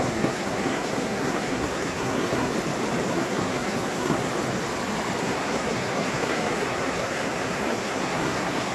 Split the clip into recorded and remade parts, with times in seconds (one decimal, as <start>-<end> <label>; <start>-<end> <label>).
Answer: 0.0-2.5 remade; 2.5-3.1 recorded; 3.1-4.3 remade; 4.3-5.2 recorded; 5.2-8.7 remade

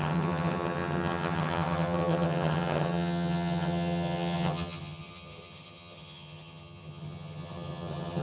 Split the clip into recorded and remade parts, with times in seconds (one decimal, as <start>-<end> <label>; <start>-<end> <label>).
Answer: 0.0-8.2 remade